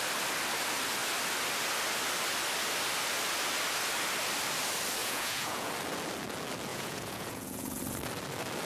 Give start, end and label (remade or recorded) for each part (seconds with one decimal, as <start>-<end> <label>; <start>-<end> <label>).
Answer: 0.0-5.0 recorded; 5.0-5.7 remade; 5.7-6.7 recorded; 6.7-7.8 remade; 7.8-8.7 recorded